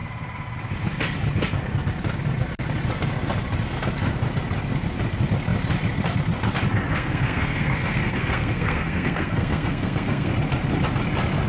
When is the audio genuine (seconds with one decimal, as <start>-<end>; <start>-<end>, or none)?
0.0-6.9; 10.3-11.5